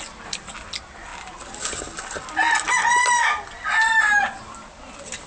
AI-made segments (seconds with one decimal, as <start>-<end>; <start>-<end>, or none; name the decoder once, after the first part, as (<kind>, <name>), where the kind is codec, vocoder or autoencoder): none